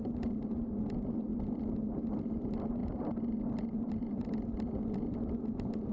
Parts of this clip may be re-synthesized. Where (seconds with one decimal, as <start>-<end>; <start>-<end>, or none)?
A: none